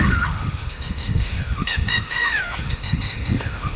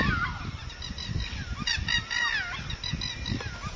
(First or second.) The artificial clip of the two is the first